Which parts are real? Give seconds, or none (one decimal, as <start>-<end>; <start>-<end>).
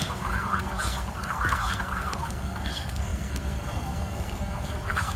none